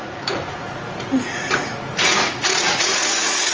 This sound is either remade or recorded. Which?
remade